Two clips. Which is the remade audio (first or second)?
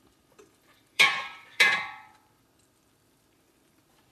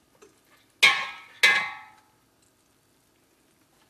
first